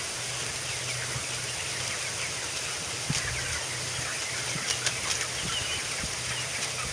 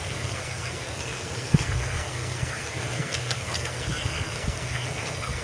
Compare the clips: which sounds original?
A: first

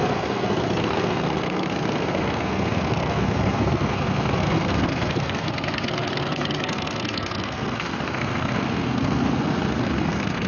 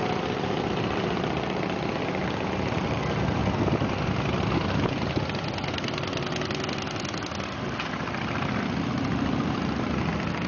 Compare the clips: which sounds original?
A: second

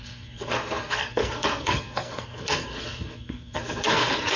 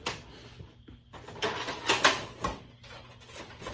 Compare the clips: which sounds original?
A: second